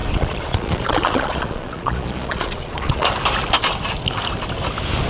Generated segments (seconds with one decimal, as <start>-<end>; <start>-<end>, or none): 0.0-3.1